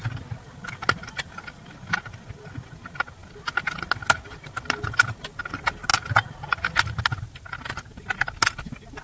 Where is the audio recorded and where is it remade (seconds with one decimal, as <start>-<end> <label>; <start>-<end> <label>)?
0.0-9.0 recorded